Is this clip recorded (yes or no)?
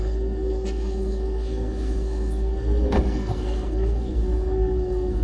no